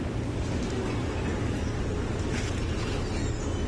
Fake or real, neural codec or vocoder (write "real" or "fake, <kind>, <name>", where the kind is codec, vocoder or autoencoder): real